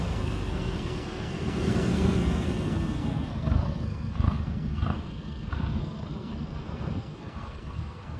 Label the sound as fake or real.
fake